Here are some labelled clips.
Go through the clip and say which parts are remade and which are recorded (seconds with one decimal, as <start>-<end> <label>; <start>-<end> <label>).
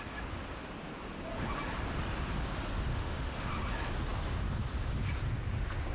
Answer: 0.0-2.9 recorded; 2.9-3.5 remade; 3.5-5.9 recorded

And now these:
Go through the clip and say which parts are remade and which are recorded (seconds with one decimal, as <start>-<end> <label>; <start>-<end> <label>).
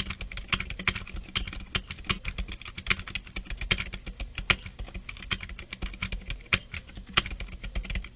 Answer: 0.0-8.2 recorded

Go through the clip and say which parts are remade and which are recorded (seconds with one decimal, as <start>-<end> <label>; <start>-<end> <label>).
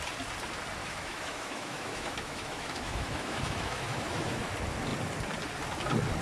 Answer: 0.0-0.8 recorded; 0.8-4.5 remade; 4.5-6.2 recorded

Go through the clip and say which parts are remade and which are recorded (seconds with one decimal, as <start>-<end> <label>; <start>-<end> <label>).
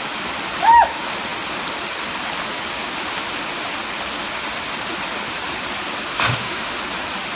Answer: 0.0-6.1 recorded; 6.1-6.8 remade; 6.8-7.4 recorded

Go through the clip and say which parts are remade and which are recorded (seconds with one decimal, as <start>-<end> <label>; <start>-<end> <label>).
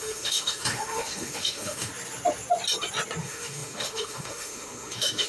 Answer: 0.0-1.9 remade; 1.9-3.2 recorded; 3.2-5.3 remade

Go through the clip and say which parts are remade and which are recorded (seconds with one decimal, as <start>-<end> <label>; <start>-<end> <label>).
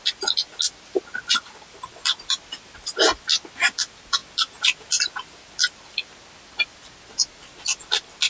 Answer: 0.0-8.3 recorded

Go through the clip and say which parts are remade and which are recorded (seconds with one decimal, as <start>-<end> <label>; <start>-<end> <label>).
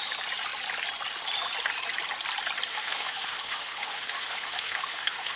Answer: 0.0-2.7 recorded; 2.7-5.4 remade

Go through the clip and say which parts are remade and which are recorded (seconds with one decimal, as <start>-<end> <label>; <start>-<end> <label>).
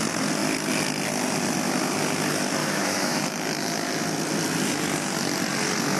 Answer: 0.0-2.6 recorded; 2.6-3.2 remade; 3.2-6.0 recorded